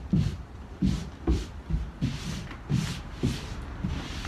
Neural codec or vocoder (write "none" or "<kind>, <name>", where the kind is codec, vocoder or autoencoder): vocoder, BigVGAN v2